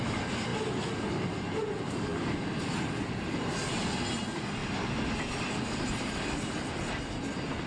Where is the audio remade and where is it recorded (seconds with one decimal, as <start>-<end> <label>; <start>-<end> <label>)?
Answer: 0.0-7.7 recorded